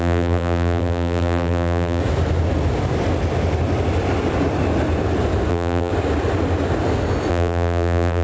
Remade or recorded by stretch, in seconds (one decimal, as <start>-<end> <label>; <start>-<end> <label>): 0.0-2.0 remade; 2.0-5.5 recorded; 5.5-5.9 remade; 5.9-7.3 recorded; 7.3-8.2 remade

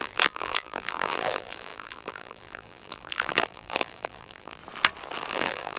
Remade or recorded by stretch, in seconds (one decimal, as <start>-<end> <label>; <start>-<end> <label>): 0.0-4.6 remade; 4.6-5.3 recorded; 5.3-5.8 remade

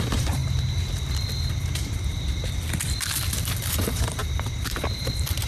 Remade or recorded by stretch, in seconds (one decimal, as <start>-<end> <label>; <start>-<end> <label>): 0.0-0.4 remade; 0.4-3.7 recorded; 3.7-5.5 remade

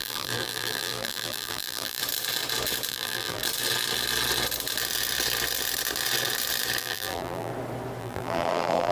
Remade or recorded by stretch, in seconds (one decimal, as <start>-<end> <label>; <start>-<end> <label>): 0.0-2.0 remade; 2.0-2.9 recorded; 2.9-3.4 remade; 3.4-6.8 recorded; 6.8-7.5 remade; 7.5-8.0 recorded; 8.0-8.9 remade

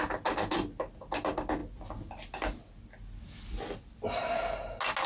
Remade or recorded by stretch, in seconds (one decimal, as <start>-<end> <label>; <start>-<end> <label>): 0.0-5.1 recorded

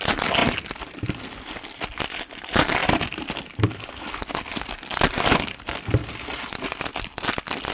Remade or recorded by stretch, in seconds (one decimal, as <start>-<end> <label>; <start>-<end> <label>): 0.0-2.8 recorded; 2.8-3.9 remade; 3.9-6.0 recorded; 6.0-7.3 remade; 7.3-7.7 recorded

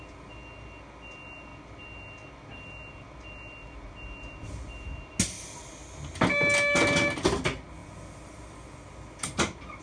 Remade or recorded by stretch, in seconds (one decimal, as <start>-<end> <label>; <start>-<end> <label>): 0.0-7.8 recorded; 7.8-9.8 remade

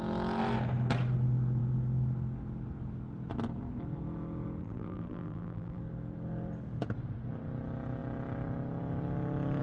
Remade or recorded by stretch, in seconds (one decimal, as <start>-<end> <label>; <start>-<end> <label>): 0.0-4.6 recorded; 4.6-5.8 remade; 5.8-9.6 recorded